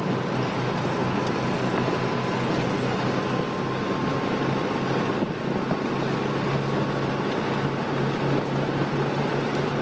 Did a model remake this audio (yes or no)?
no